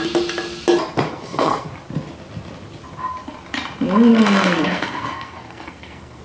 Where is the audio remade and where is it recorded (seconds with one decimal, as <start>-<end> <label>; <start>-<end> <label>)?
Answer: 0.0-1.1 recorded; 1.1-1.7 remade; 1.7-4.1 recorded; 4.1-6.2 remade